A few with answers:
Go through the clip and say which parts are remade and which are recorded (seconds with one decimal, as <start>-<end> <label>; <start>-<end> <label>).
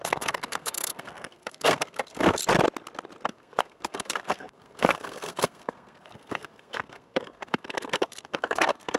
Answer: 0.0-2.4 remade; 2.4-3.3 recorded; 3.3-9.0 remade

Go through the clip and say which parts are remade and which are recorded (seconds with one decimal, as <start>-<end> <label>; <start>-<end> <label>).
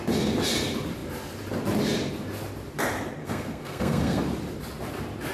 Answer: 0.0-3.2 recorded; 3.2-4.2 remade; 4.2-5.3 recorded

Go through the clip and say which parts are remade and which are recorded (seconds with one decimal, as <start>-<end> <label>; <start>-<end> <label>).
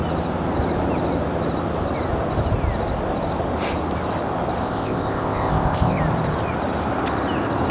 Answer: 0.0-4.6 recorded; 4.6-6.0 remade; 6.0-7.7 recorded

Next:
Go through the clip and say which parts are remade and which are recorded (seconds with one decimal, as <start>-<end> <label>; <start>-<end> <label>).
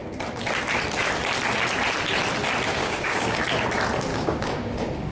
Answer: 0.0-2.7 recorded; 2.7-3.4 remade; 3.4-4.1 recorded; 4.1-5.1 remade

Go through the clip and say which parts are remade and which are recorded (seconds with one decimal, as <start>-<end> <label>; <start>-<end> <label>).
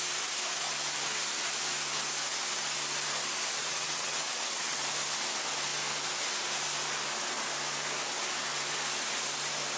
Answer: 0.0-3.6 recorded; 3.6-4.8 remade; 4.8-9.8 recorded